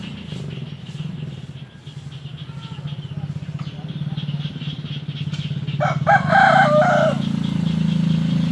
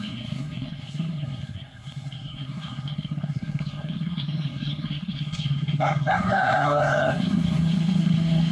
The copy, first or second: second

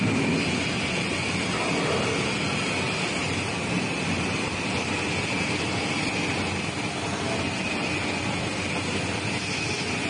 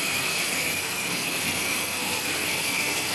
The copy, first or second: second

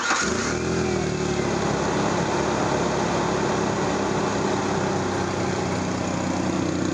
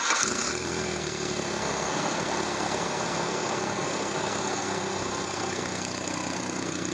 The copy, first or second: second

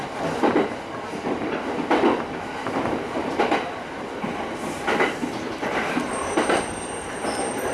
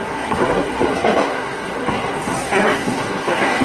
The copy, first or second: second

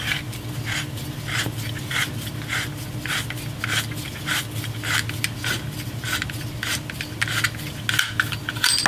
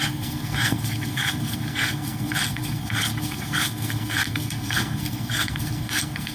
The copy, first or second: second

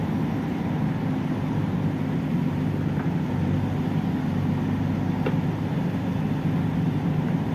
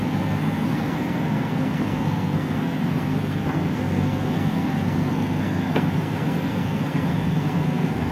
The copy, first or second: second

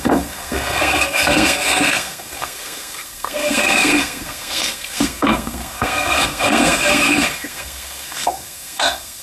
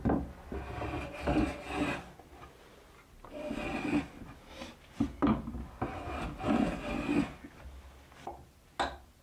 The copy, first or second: first